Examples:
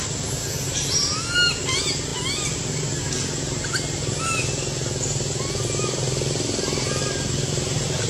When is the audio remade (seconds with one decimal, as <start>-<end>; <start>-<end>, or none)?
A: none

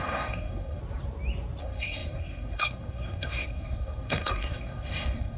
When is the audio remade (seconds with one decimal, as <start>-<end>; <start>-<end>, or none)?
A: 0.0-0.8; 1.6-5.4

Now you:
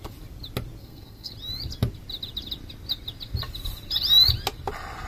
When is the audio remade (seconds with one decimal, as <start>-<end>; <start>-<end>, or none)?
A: 0.8-1.3